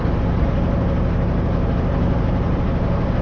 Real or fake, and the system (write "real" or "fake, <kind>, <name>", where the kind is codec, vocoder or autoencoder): real